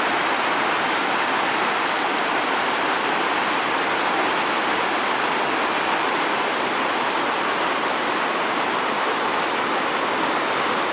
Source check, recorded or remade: recorded